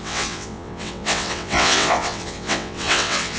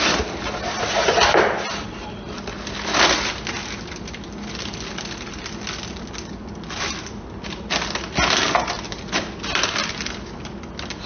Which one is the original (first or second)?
second